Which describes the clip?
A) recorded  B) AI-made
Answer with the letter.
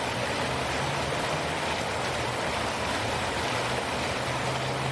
A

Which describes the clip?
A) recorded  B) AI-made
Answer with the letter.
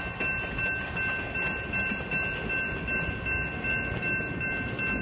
A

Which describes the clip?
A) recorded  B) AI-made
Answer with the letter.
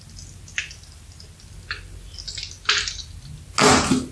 A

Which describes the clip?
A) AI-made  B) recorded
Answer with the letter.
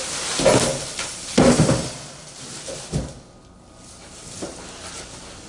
B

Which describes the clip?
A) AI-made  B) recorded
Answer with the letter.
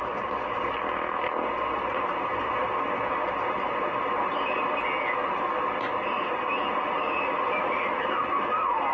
B